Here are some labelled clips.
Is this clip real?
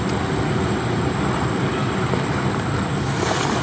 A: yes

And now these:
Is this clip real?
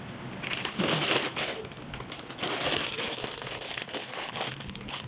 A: yes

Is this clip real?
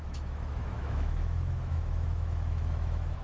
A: no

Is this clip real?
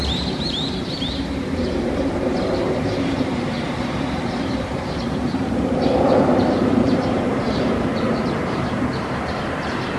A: no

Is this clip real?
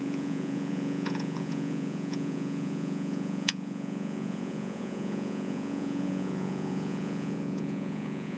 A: no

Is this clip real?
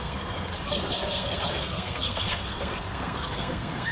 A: no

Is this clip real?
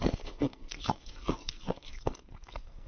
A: no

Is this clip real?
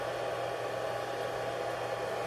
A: yes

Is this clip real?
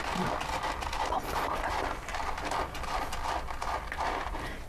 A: yes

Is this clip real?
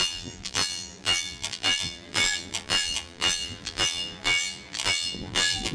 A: no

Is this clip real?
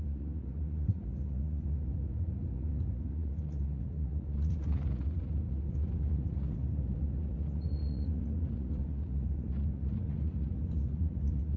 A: no